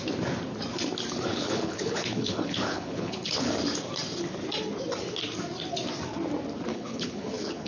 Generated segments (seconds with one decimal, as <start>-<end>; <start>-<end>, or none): 1.3-3.5; 6.7-7.7